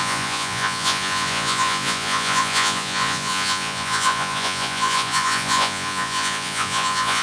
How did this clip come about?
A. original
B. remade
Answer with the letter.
B